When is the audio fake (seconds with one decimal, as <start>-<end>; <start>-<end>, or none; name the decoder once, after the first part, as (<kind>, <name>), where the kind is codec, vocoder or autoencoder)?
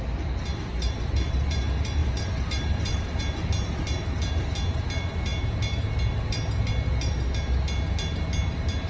0.5-1.6 (vocoder, BigVGAN v2); 2.0-3.2